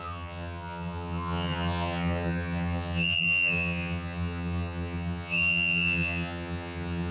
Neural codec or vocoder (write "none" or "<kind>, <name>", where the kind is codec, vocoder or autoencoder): vocoder, HiFi-GAN